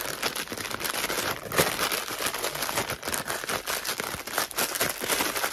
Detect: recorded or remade recorded